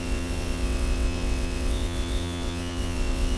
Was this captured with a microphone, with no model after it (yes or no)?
no